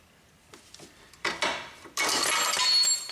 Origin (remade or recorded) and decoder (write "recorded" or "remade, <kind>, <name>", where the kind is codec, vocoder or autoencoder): recorded